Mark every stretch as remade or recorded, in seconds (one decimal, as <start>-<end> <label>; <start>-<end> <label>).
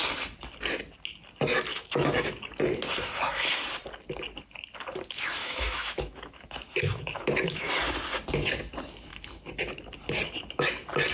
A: 0.0-1.7 recorded; 1.7-2.6 remade; 2.6-5.4 recorded; 5.4-7.7 remade; 7.7-11.1 recorded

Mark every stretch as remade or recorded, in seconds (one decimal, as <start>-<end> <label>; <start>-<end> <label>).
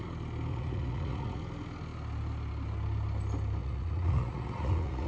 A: 0.0-0.5 recorded; 0.5-1.4 remade; 1.4-3.6 recorded; 3.6-5.1 remade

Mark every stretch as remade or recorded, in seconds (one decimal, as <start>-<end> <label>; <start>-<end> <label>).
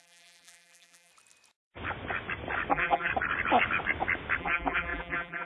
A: 0.0-1.1 remade; 1.1-2.7 recorded; 2.7-3.1 remade; 3.1-4.4 recorded; 4.4-5.5 remade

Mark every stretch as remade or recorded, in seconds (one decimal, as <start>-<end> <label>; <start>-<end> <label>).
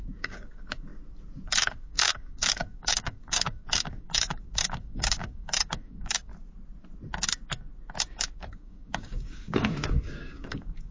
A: 0.0-0.9 remade; 0.9-1.6 recorded; 1.6-6.3 remade; 6.3-8.1 recorded; 8.1-10.9 remade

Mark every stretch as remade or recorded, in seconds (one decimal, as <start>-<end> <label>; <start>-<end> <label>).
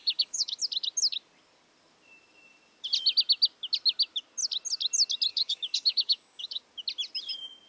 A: 0.0-0.6 remade; 0.6-5.3 recorded; 5.3-6.6 remade; 6.6-7.7 recorded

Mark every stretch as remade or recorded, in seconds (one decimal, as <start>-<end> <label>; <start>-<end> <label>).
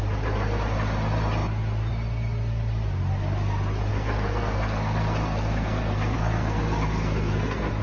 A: 0.0-3.9 recorded; 3.9-7.8 remade